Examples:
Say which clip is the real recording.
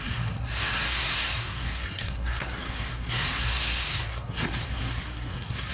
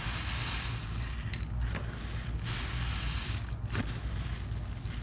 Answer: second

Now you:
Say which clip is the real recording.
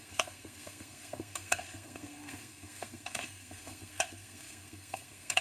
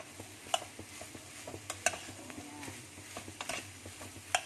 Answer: second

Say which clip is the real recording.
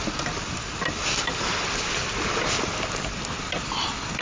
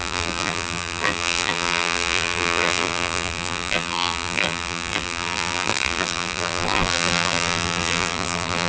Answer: first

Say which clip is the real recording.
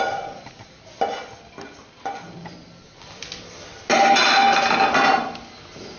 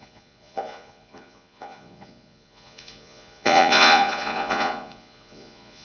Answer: first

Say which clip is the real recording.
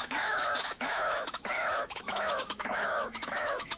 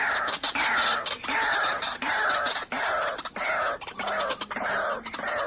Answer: second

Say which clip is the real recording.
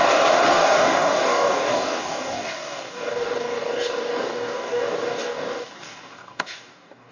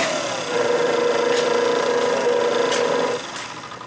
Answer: second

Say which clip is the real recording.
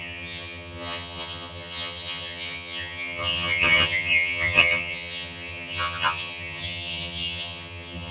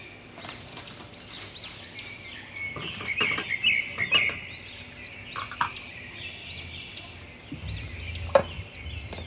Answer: second